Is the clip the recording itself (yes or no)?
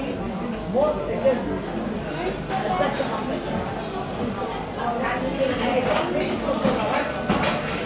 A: yes